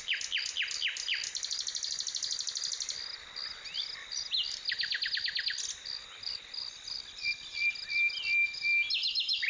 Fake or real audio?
real